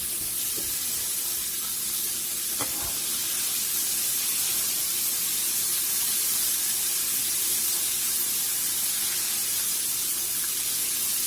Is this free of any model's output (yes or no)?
yes